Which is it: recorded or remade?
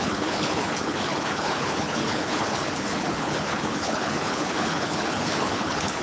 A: remade